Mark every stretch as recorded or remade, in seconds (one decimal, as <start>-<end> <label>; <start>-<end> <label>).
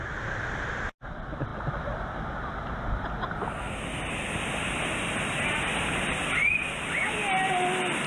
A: 0.0-8.1 recorded